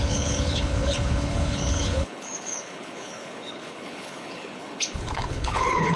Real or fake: fake